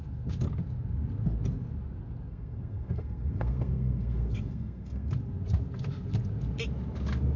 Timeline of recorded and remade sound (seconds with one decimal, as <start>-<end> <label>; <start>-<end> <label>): 0.0-2.3 recorded; 2.3-5.1 remade; 5.1-7.4 recorded